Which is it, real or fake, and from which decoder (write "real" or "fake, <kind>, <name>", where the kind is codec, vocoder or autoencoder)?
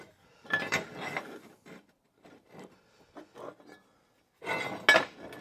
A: real